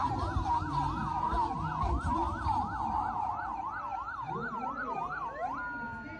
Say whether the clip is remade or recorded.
recorded